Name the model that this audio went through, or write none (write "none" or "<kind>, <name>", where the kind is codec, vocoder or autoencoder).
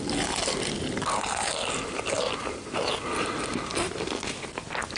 none